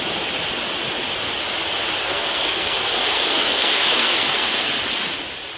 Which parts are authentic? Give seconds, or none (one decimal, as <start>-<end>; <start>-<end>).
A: 0.0-2.0; 4.7-5.6